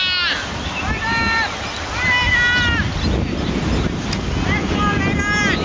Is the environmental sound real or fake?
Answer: real